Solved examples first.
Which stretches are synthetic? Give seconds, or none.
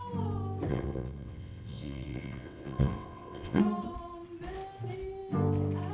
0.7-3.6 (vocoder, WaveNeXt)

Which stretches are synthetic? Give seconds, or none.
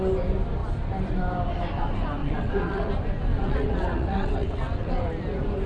2.2-2.9 (vocoder, WaveNeXt); 3.3-5.0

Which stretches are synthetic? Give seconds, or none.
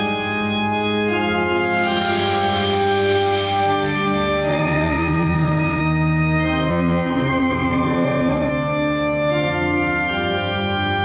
4.5-5.8 (vocoder, WaveNeXt); 6.7-8.5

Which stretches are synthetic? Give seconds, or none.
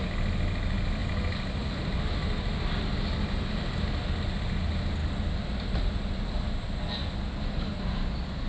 none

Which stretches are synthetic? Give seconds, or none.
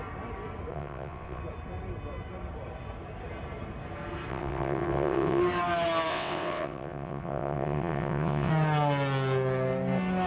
0.7-1.4 (vocoder, WaveNeXt); 4.3-5.4; 6.1-8.5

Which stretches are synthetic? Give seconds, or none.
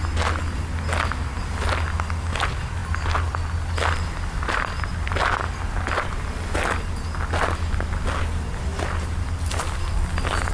none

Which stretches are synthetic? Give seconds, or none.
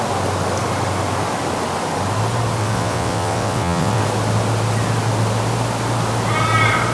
2.6-4.0 (vocoder, WaveNeXt)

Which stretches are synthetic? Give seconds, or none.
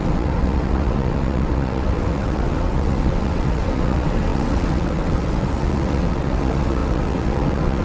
0.0-7.8 (vocoder, WaveNeXt)